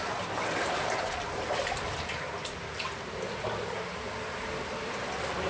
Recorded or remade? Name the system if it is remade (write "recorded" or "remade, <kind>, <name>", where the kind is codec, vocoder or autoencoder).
recorded